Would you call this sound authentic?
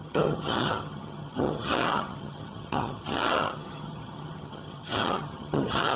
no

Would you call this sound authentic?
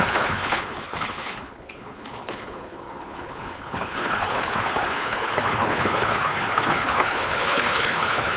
no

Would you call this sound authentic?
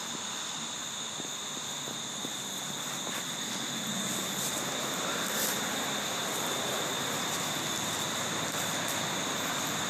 yes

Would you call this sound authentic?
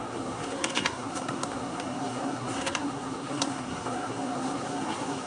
no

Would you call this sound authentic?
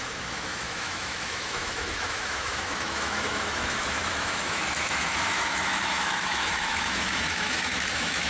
no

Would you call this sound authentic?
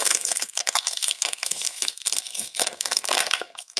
no